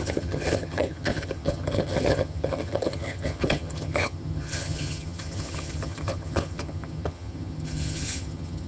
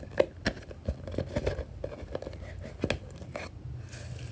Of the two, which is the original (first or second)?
second